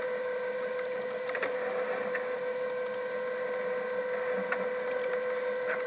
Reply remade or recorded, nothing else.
recorded